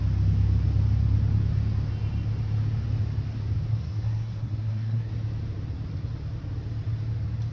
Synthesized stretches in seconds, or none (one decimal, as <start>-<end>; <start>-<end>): 3.7-5.1